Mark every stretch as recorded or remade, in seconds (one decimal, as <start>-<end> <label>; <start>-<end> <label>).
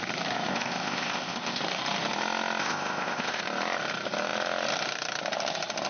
0.0-0.5 recorded; 0.5-1.6 remade; 1.6-2.6 recorded; 2.6-3.4 remade; 3.4-5.9 recorded